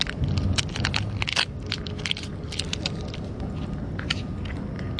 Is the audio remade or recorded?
recorded